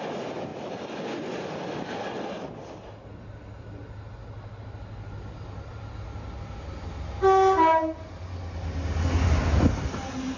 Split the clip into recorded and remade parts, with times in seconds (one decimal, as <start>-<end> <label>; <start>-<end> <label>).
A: 0.0-10.4 recorded